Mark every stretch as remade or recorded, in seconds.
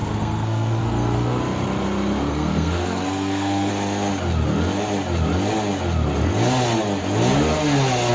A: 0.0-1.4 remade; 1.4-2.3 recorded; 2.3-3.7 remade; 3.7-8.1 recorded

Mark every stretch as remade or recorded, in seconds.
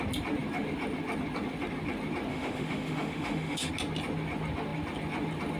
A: 0.0-2.3 recorded; 2.3-3.7 remade; 3.7-5.6 recorded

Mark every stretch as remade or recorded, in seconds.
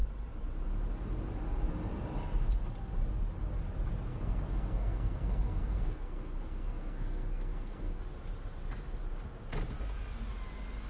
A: 0.0-4.1 recorded; 4.1-8.0 remade; 8.0-10.9 recorded